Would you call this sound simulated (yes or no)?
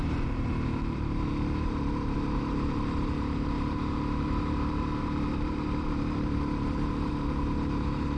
yes